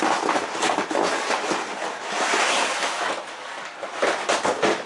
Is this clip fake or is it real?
real